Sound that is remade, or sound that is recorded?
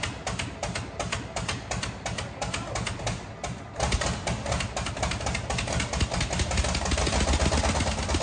recorded